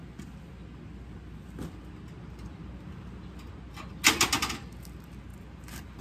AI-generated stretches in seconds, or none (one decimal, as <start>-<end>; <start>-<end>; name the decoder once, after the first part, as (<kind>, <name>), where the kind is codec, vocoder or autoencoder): none